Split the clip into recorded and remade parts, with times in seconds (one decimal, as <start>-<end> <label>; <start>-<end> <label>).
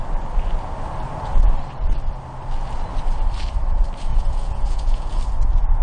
0.0-4.1 recorded; 4.1-5.2 remade; 5.2-5.8 recorded